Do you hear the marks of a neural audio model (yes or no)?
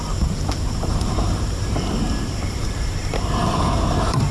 yes